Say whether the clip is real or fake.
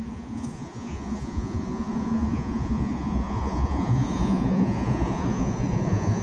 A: fake